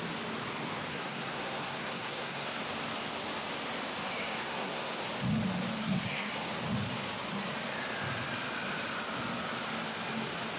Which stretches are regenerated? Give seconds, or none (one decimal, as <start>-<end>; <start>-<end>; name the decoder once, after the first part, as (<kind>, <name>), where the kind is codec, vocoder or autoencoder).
0.9-2.6 (codec, SNAC); 4.4-5.0; 5.8-6.3